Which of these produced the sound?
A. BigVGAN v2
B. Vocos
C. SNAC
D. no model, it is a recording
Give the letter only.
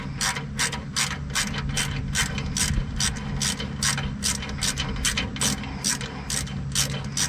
D